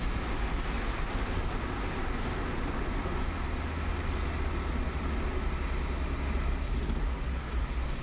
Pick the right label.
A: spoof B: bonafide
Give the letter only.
B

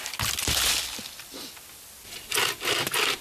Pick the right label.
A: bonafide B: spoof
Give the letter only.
A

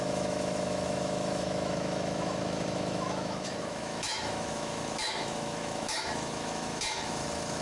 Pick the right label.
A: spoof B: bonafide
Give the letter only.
A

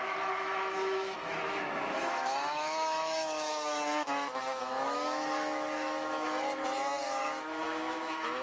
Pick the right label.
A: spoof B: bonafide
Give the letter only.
A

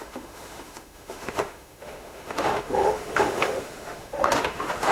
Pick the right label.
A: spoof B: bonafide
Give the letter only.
A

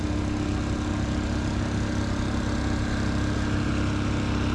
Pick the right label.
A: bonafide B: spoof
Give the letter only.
A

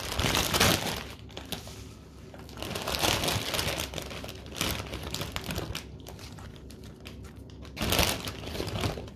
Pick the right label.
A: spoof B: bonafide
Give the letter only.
B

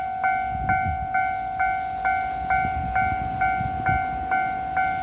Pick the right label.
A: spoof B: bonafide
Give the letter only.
B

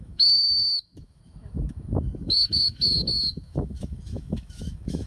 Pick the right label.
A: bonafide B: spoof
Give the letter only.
B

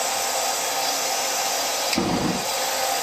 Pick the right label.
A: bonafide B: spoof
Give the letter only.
A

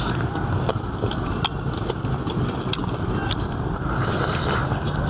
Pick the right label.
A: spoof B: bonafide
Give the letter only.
B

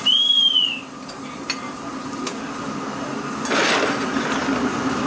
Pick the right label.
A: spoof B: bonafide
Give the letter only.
B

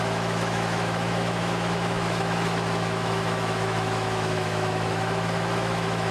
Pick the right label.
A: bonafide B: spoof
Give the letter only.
B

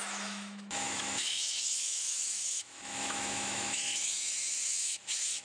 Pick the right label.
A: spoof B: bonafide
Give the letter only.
A